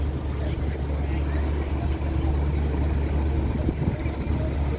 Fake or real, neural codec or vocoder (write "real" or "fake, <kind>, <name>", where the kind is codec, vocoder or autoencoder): real